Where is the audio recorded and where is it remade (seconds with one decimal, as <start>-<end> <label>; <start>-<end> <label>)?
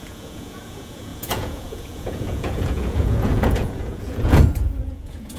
0.0-5.4 remade